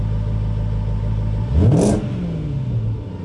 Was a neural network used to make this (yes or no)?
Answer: no